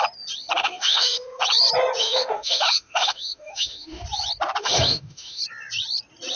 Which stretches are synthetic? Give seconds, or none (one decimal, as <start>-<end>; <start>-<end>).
0.6-1.4; 2.0-4.0; 4.6-5.4